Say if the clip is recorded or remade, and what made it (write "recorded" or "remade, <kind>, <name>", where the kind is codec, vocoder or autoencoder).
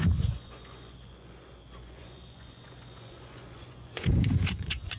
remade, vocoder, Vocos